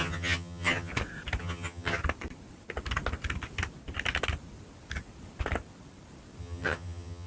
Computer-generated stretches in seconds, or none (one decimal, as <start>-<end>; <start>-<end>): 0.0-0.9; 1.4-2.0; 6.4-7.3